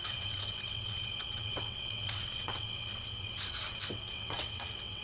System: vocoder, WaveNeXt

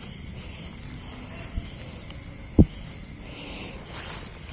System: none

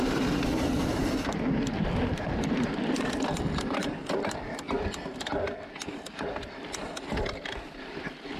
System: vocoder, BigVGAN v2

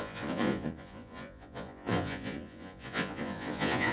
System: vocoder, Vocos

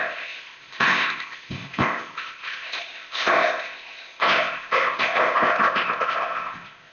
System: codec, ZipCodec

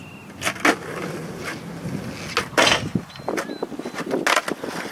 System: none